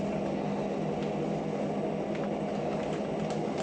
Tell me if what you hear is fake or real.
real